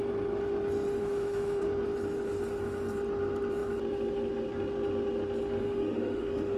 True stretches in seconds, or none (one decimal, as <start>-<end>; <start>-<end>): 0.0-1.0; 1.6-5.6